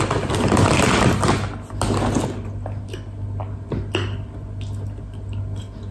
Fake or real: real